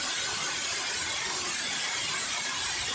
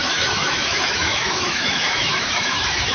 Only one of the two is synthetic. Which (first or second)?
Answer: second